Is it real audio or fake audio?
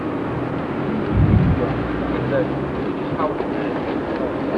real